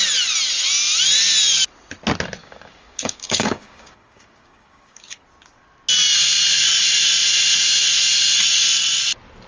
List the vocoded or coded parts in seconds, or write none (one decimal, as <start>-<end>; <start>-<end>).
2.4-5.2